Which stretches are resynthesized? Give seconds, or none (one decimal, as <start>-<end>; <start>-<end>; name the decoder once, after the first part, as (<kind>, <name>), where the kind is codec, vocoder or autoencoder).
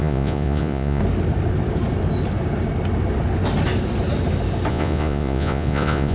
0.0-1.0 (vocoder, Vocos); 4.7-6.1